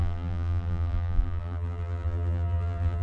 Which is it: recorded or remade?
remade